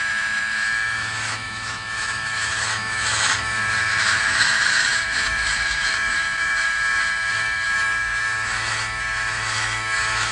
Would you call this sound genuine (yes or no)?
no